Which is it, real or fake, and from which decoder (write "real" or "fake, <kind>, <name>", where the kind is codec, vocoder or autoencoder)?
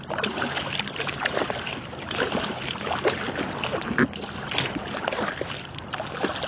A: real